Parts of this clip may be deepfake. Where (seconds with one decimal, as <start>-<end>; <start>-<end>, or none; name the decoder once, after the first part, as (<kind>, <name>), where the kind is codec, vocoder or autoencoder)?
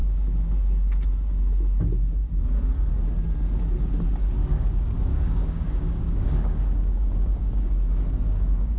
4.4-8.8 (codec, DAC)